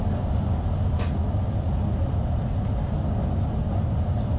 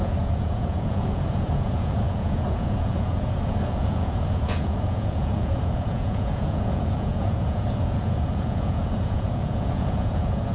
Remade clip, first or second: second